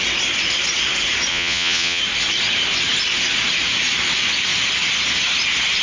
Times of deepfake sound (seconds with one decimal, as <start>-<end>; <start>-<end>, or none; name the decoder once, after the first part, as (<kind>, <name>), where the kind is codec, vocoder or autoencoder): 1.3-2.0 (vocoder, Vocos)